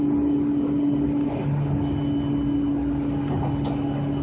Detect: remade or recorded recorded